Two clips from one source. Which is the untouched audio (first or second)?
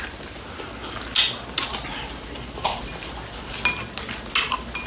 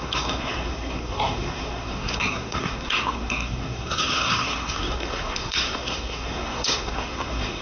first